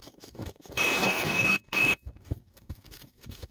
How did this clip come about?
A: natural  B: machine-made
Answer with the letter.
B